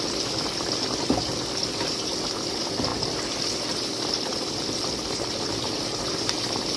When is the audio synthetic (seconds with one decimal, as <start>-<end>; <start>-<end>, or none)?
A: 2.9-6.8

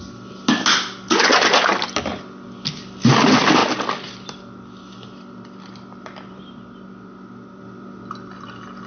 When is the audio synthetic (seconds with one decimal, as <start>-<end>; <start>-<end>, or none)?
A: none